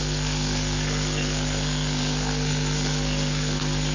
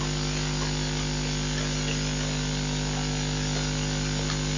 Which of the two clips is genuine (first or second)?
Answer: second